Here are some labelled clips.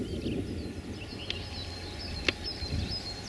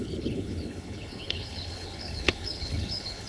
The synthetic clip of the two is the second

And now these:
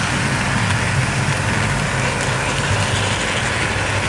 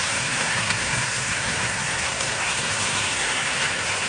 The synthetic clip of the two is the second